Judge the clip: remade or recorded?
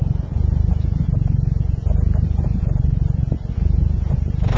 recorded